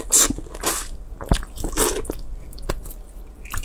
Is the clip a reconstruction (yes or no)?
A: no